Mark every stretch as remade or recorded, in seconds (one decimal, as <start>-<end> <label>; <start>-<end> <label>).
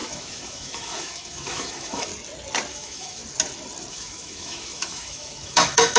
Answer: 0.0-2.1 remade; 2.1-2.7 recorded; 2.7-3.2 remade; 3.2-3.9 recorded; 3.9-6.0 remade